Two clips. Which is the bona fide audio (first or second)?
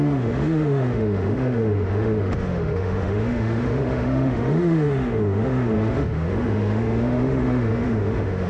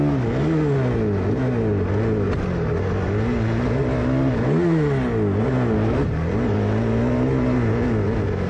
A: second